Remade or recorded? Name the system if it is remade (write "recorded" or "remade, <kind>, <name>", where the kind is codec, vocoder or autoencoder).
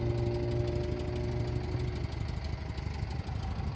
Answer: recorded